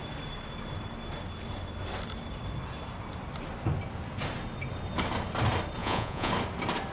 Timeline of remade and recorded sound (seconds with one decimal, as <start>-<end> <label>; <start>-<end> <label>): 0.0-5.8 recorded; 5.8-6.3 remade; 6.3-6.9 recorded